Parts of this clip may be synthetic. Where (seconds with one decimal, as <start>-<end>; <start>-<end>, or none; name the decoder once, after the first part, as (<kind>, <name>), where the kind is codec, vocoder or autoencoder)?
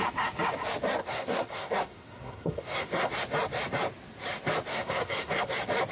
1.0-3.1 (codec, SNAC); 4.7-5.5